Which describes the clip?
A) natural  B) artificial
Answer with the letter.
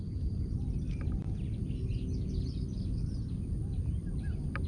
A